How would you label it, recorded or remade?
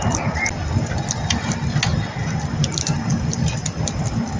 recorded